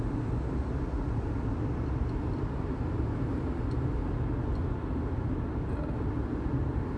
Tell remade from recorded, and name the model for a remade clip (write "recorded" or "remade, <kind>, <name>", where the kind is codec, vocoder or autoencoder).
recorded